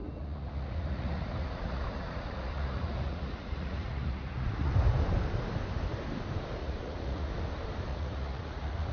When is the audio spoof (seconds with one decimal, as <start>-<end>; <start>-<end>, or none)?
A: 0.0-4.7; 6.6-7.3; 7.9-8.9